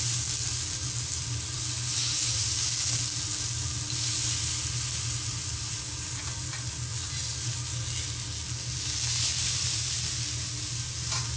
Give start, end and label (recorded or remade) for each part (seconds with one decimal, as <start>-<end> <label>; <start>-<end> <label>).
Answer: 0.0-11.4 recorded